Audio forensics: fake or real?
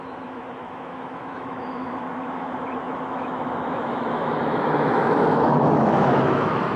fake